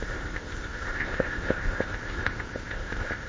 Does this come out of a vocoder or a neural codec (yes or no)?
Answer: yes